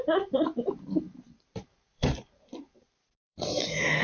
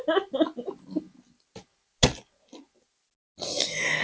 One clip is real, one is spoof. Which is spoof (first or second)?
first